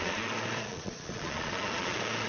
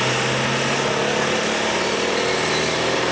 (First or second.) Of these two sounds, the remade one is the first